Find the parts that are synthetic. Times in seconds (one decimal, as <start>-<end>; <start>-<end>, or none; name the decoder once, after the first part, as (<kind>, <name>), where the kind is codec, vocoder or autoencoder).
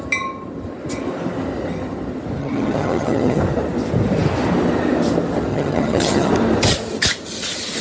2.4-3.4 (vocoder, HiFi-GAN); 5.5-6.3